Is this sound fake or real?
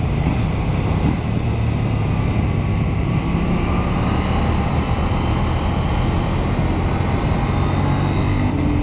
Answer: real